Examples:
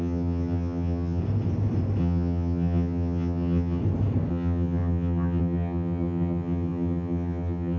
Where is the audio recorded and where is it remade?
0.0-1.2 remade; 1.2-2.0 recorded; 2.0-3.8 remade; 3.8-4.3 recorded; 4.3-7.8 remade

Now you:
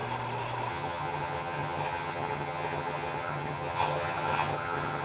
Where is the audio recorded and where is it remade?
0.0-0.7 recorded; 0.7-5.0 remade

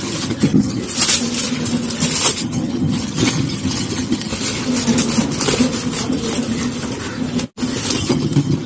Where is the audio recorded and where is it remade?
0.0-0.8 remade; 0.8-2.4 recorded; 2.4-4.3 remade; 4.3-8.0 recorded; 8.0-8.7 remade